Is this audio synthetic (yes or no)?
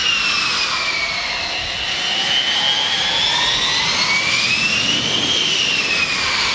no